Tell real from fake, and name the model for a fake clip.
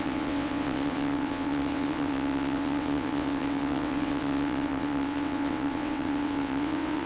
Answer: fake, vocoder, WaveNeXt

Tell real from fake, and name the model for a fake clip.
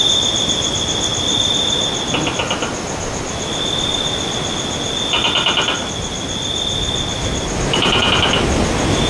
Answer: real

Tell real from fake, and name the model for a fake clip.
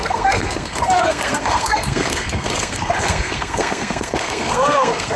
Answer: fake, codec, SNAC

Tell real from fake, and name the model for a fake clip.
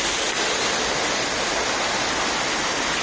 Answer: real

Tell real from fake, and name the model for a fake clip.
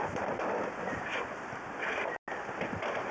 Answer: real